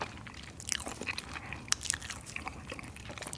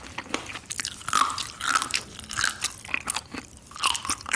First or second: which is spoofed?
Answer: second